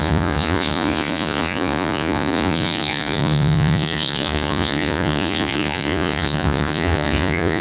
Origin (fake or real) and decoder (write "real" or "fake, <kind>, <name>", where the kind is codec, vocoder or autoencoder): fake, vocoder, Vocos